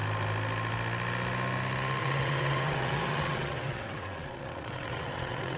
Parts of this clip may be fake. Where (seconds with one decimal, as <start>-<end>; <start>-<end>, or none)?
2.0-5.6